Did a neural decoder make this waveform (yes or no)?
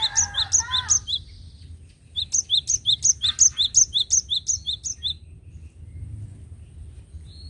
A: no